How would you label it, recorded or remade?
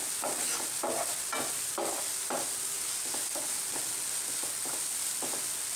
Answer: recorded